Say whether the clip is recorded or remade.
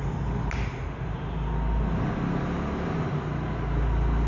recorded